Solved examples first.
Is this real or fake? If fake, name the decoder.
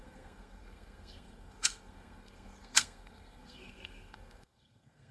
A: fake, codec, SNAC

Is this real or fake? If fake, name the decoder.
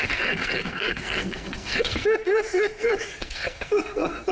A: fake, codec, SNAC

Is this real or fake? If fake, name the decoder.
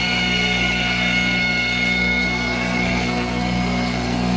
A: fake, codec, SNAC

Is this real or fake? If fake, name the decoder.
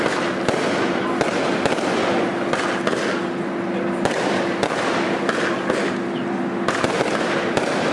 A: real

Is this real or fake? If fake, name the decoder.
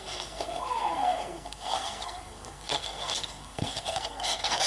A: fake, codec, SNAC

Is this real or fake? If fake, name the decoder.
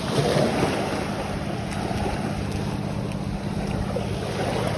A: real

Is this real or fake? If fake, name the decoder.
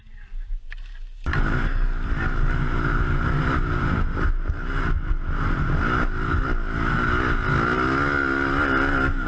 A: real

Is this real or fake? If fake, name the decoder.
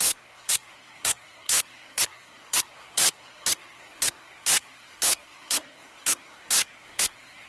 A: fake, codec, SNAC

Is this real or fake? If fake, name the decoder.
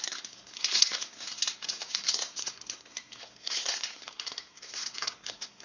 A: fake, codec, SNAC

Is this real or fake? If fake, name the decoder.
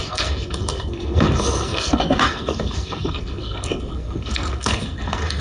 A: fake, codec, SNAC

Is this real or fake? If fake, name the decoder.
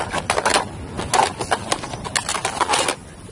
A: real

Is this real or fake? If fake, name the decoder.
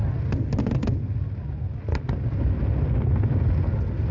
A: real